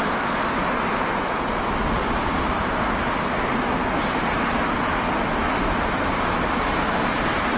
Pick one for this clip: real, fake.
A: real